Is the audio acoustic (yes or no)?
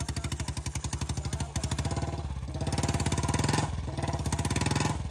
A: yes